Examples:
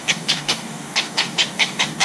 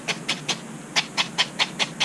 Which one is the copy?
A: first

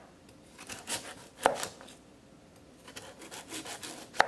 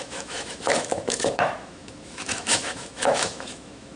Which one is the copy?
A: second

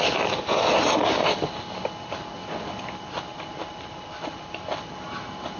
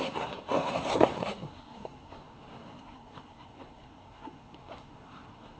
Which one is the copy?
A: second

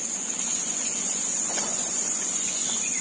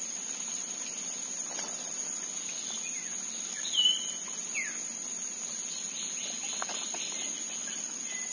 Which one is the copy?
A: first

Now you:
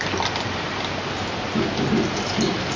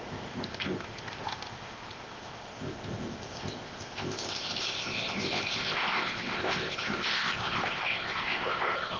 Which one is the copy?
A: second